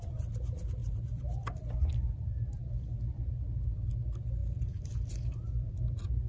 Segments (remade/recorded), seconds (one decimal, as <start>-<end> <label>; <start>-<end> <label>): 0.0-0.8 recorded; 0.8-1.5 remade; 1.5-6.3 recorded